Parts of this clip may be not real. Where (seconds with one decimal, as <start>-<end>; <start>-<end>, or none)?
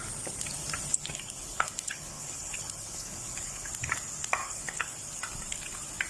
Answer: 0.9-3.7; 4.4-5.0